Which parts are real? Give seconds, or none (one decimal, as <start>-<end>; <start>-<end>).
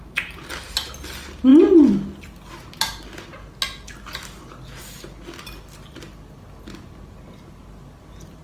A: 0.0-8.4